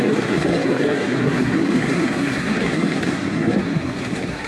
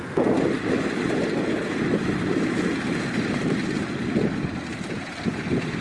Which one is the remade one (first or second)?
first